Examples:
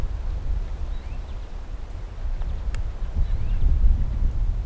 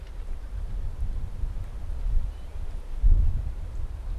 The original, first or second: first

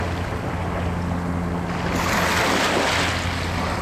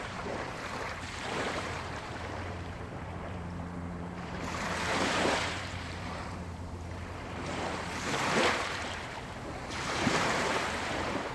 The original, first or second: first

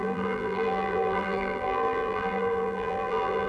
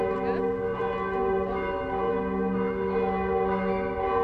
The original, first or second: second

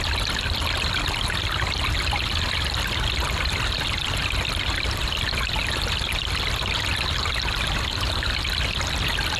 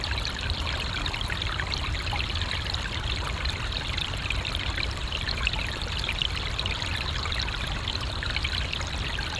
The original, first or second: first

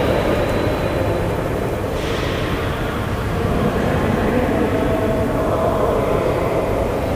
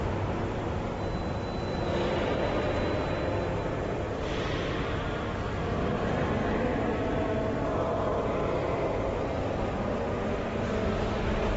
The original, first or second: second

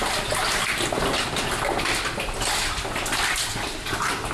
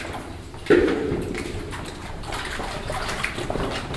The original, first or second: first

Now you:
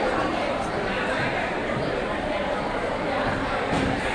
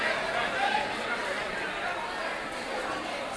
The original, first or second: second